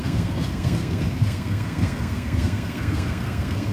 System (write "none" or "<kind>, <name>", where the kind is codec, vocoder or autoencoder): codec, SNAC